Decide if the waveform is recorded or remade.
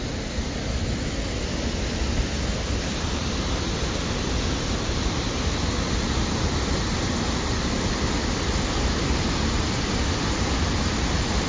recorded